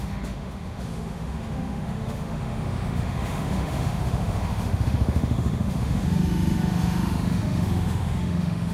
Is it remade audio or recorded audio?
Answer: remade